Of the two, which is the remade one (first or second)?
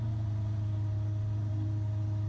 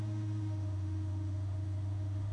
second